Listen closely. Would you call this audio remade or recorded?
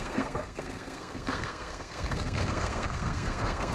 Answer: remade